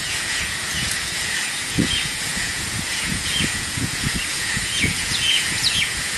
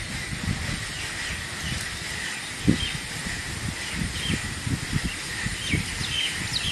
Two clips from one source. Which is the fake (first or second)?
first